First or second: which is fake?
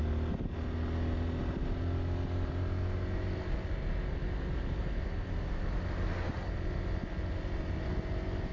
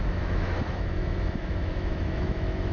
second